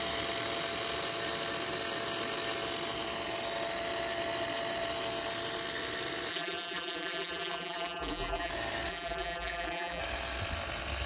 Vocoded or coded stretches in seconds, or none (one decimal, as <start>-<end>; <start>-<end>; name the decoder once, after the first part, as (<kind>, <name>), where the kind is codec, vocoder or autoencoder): 6.3-8.5 (vocoder, BigVGAN v2); 8.9-10.0